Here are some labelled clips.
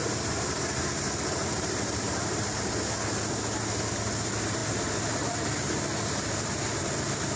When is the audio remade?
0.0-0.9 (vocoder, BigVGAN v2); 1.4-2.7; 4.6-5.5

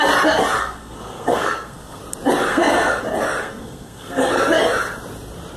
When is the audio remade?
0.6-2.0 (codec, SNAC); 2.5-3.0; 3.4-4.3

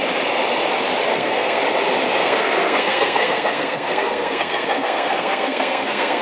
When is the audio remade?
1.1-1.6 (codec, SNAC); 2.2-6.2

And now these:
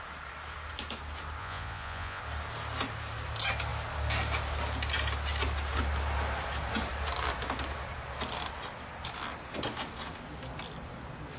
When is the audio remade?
1.4-2.2 (vocoder, Vocos)

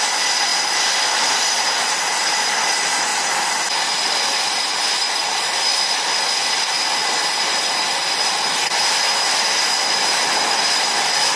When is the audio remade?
none

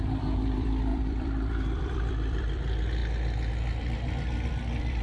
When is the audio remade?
0.0-3.0 (vocoder, BigVGAN v2); 3.8-5.0

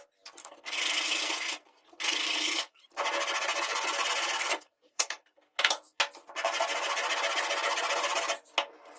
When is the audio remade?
0.4-2.8 (codec, SNAC); 4.2-6.0